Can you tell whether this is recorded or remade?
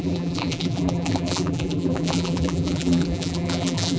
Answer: remade